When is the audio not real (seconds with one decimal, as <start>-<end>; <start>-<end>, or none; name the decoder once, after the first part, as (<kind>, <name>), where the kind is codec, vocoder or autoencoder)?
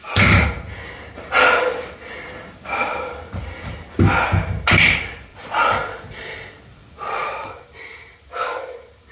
5.3-7.5 (vocoder, Vocos)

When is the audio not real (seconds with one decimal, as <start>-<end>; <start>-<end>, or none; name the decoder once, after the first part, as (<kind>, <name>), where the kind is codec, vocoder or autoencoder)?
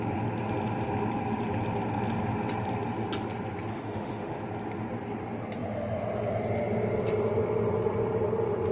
3.7-4.4 (autoencoder, DAC-VAE)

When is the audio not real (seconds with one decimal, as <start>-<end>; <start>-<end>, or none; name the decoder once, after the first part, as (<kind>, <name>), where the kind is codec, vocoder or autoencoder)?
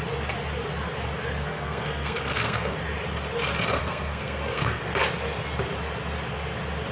1.4-2.7 (codec, SNAC); 3.8-4.8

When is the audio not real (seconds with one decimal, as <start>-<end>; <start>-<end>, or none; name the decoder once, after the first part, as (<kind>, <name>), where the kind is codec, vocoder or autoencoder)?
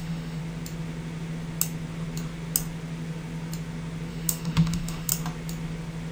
0.0-0.4 (autoencoder, DAC-VAE); 4.1-5.1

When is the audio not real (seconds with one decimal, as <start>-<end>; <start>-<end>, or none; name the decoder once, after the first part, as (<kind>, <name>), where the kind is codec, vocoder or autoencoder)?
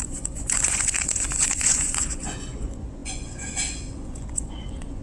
0.0-5.0 (vocoder, Vocos)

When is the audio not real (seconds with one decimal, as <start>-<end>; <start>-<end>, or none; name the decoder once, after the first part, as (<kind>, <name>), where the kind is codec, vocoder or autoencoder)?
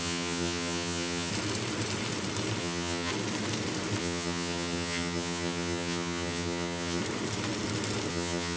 0.0-1.3 (vocoder, HiFi-GAN); 2.6-3.1; 4.0-7.0; 8.1-8.6